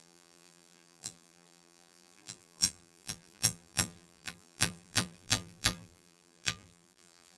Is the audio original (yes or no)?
no